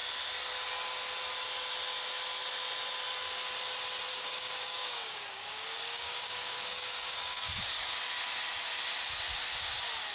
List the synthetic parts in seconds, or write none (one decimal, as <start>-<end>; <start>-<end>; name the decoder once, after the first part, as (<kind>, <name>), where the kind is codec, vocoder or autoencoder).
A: 4.1-7.6 (codec, DAC)